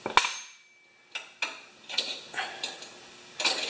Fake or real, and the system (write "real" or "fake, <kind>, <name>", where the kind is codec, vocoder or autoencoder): real